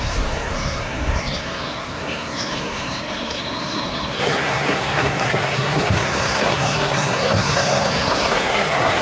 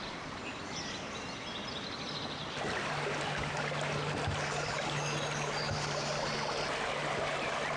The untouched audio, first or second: second